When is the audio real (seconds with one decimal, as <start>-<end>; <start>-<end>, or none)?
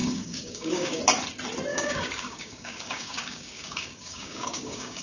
1.0-1.7